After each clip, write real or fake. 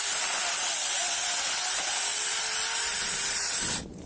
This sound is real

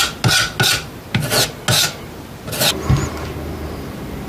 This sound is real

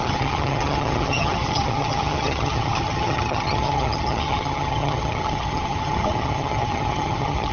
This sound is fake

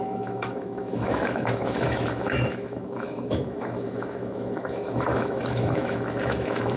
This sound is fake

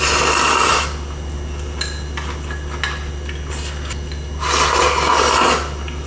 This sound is real